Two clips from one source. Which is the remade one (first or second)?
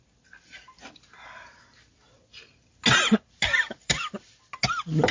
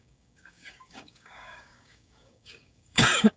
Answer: second